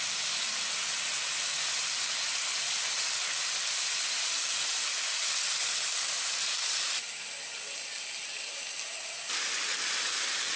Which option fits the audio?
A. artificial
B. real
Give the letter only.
B